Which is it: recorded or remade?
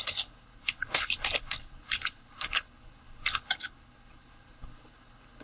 remade